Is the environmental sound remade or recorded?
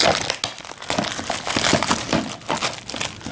recorded